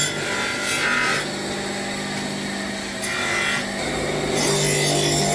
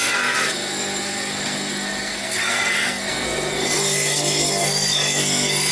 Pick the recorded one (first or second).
first